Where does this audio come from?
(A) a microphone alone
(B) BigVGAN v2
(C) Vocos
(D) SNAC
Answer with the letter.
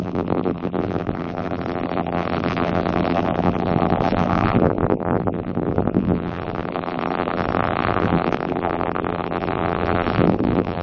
B